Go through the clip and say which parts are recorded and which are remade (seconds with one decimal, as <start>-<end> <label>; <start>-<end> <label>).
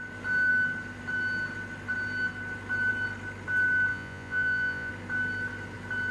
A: 0.0-3.9 recorded; 3.9-4.9 remade; 4.9-6.1 recorded